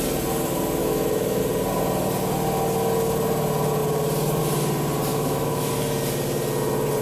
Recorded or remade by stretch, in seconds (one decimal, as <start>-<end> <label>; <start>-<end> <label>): 0.0-0.8 recorded; 0.8-1.4 remade; 1.4-5.1 recorded; 5.1-5.7 remade; 5.7-7.0 recorded